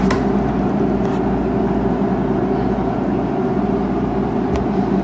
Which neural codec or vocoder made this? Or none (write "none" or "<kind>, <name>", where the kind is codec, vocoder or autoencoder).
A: none